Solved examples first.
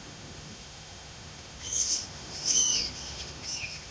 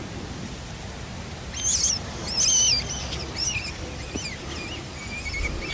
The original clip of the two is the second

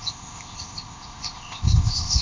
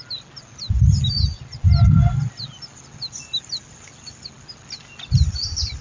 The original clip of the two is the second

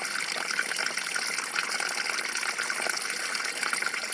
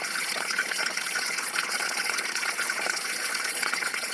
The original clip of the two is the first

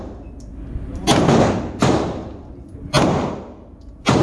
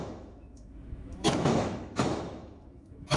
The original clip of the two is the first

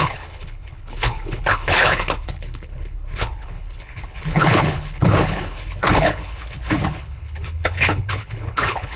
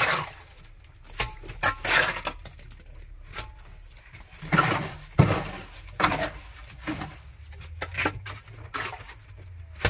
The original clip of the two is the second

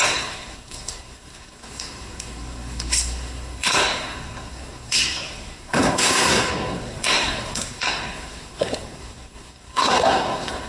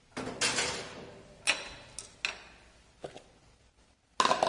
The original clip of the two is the second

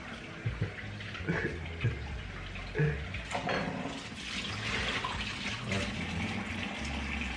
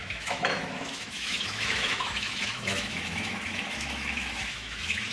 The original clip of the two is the first